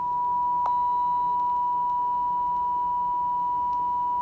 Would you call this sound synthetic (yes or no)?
no